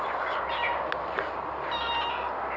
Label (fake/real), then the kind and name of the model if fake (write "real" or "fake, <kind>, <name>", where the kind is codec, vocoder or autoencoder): real